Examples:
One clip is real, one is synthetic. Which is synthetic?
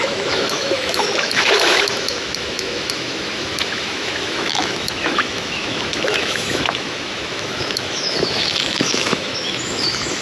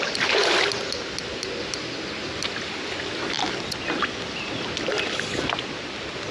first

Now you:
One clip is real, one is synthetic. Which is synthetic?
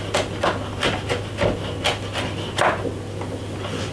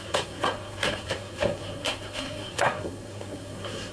second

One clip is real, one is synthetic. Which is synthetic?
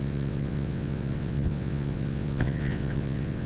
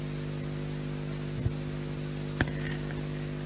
first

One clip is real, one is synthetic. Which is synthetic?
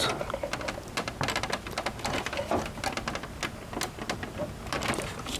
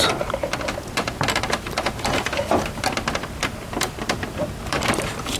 second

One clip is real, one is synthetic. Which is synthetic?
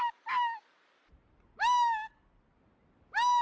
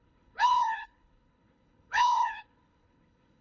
second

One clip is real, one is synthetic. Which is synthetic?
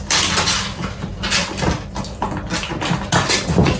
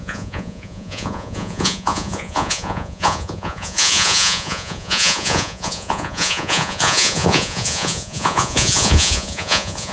second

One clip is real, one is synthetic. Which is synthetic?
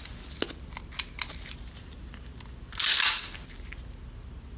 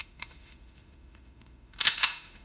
second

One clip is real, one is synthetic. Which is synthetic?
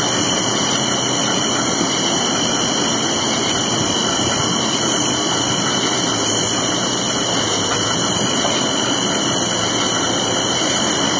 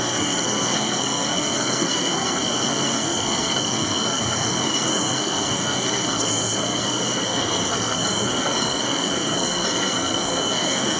second